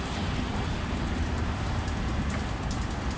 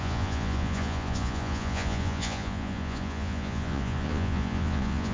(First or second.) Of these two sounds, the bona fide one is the first